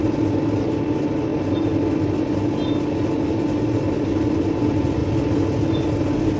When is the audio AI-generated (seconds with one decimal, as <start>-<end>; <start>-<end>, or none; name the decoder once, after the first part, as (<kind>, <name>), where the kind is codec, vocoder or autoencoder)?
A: none